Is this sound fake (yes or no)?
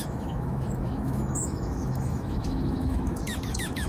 yes